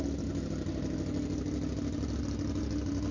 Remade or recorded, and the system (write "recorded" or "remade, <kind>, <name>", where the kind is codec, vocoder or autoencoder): recorded